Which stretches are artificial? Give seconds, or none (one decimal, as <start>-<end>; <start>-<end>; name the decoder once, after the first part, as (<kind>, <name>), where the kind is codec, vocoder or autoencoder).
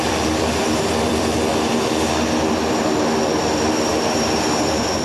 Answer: 0.0-1.5 (vocoder, BigVGAN v2); 3.2-5.0